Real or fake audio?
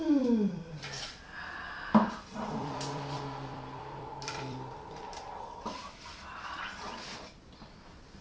fake